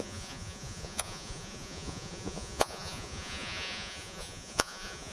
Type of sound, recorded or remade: remade